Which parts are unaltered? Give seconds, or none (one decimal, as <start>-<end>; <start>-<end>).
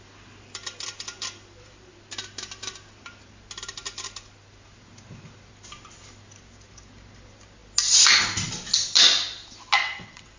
0.0-9.8